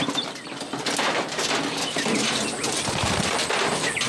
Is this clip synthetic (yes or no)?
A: no